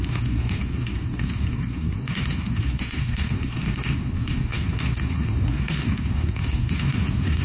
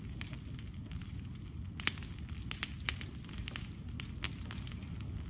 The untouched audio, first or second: second